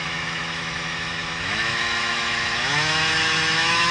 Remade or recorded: remade